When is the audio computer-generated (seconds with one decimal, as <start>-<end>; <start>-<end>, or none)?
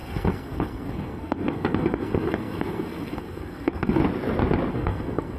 0.0-4.0; 4.7-5.4